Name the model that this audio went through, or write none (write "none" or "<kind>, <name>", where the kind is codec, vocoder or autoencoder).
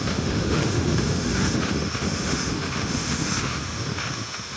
autoencoder, DAC-VAE